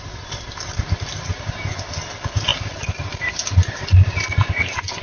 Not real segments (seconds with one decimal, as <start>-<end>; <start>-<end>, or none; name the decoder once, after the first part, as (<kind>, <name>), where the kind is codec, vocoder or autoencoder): 0.0-5.0 (vocoder, BigVGAN v2)